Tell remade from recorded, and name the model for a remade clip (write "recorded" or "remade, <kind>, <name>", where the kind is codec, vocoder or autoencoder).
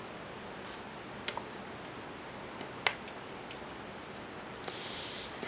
recorded